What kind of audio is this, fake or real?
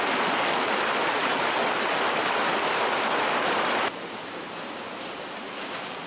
real